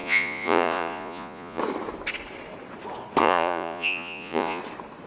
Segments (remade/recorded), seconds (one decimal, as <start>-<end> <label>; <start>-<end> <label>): 0.0-1.6 remade; 1.6-3.2 recorded; 3.2-4.6 remade; 4.6-5.1 recorded